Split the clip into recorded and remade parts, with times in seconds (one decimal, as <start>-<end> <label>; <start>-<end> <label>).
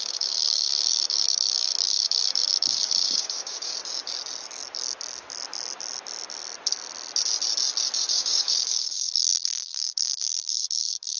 0.0-3.7 remade; 3.7-8.1 recorded; 8.1-11.2 remade